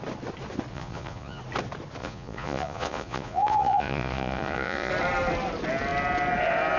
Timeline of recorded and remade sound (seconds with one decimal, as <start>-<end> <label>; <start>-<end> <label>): 0.0-0.7 recorded; 0.7-1.4 remade; 1.4-2.0 recorded; 2.0-4.9 remade; 4.9-6.8 recorded